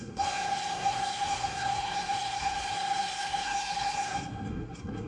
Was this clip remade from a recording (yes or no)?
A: yes